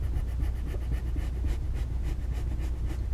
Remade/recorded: recorded